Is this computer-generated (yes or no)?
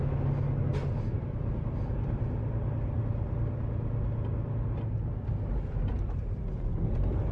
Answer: no